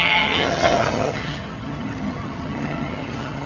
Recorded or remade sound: remade